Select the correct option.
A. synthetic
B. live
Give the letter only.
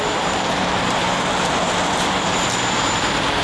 A